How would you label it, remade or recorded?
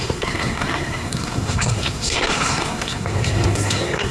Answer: remade